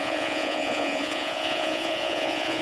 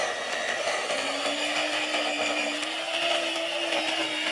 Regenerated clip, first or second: first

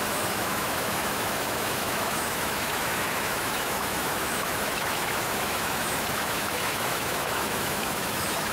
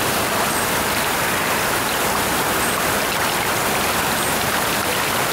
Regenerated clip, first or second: first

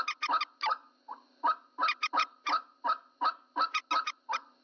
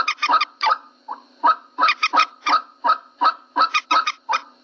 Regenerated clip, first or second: second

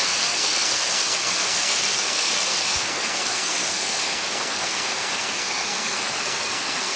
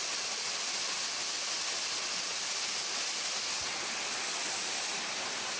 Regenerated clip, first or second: first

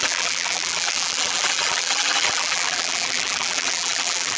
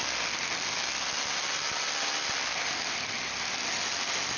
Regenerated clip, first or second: first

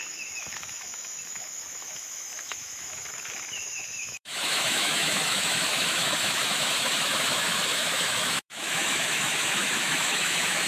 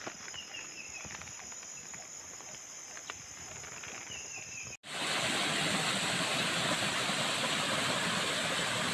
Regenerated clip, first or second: first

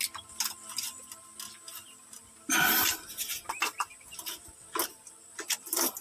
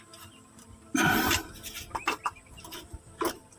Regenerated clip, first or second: second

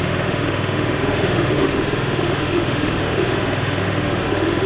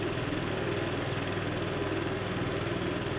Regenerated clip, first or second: first